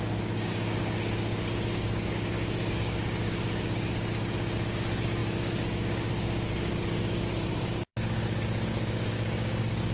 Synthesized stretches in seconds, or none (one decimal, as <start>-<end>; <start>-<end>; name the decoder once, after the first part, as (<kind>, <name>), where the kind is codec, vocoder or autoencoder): 0.0-9.9 (codec, DAC)